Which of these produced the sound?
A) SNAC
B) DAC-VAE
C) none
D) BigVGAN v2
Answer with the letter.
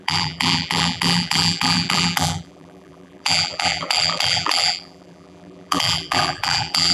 D